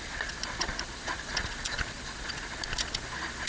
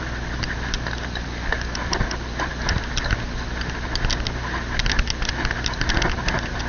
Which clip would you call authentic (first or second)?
second